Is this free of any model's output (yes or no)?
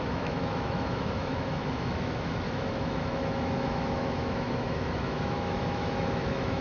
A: no